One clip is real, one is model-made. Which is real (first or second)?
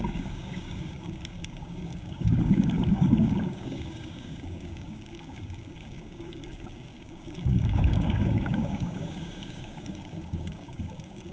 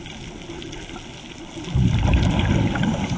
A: second